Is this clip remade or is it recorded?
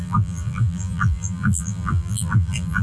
remade